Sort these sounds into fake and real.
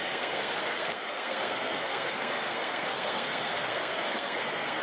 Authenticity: fake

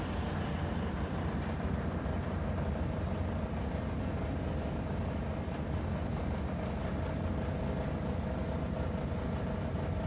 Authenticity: real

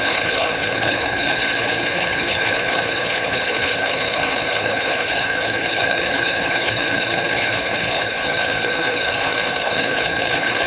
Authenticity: fake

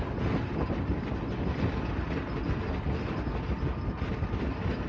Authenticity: real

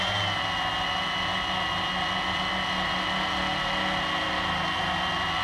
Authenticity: real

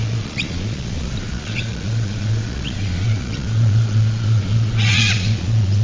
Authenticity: fake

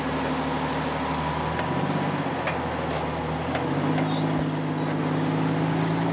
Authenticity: real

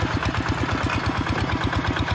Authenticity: real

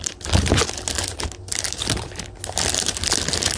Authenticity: real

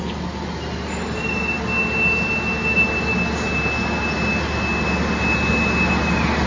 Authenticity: real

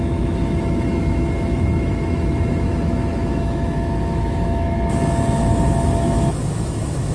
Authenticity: fake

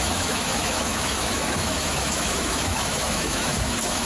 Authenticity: fake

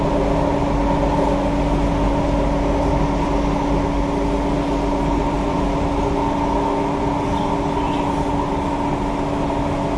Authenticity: real